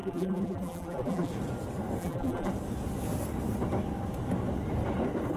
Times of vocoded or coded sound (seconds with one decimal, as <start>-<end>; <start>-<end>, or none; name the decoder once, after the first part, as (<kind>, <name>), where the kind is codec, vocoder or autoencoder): 0.0-1.3 (vocoder, BigVGAN v2); 2.0-2.5